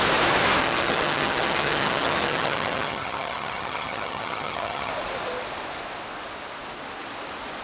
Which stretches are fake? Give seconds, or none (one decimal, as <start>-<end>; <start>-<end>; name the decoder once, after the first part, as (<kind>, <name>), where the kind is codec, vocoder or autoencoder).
0.6-4.9 (vocoder, HiFi-GAN)